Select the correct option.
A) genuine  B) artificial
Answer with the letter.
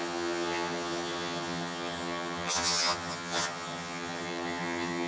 B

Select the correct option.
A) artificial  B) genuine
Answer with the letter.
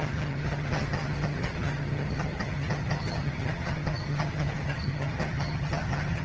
A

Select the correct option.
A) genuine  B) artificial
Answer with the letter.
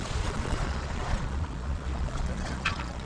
B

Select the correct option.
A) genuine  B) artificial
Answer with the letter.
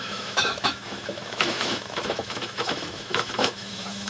B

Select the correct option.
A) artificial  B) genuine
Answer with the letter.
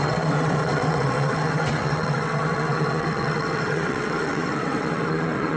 A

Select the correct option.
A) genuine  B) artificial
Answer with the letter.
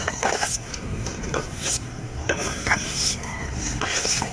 B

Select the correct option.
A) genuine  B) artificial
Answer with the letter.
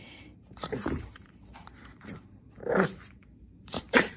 B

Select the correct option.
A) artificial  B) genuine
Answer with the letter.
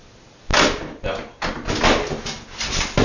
B